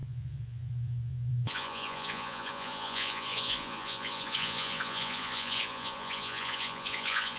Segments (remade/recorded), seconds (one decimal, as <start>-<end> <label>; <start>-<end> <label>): 0.0-7.4 remade